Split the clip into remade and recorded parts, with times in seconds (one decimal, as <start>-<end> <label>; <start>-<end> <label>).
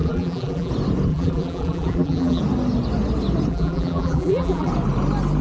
0.0-0.7 remade; 0.7-1.1 recorded; 1.1-2.4 remade; 2.4-3.5 recorded; 3.5-4.7 remade; 4.7-5.4 recorded